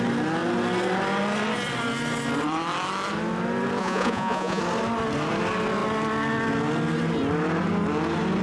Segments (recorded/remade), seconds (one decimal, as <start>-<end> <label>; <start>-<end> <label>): 0.0-3.8 recorded; 3.8-4.6 remade; 4.6-8.4 recorded